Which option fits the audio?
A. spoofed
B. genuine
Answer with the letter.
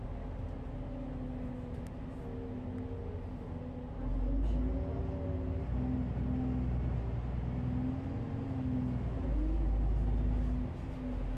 B